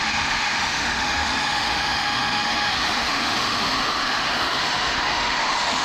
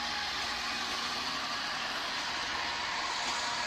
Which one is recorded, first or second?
second